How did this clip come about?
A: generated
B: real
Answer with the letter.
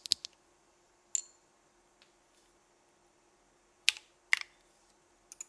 B